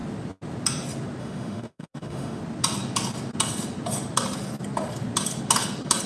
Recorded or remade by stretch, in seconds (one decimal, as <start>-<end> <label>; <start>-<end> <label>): 0.0-1.2 recorded; 1.2-2.4 remade; 2.4-6.1 recorded